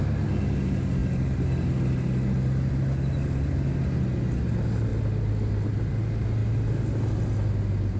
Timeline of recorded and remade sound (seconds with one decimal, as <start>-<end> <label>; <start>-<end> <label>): 0.0-8.0 recorded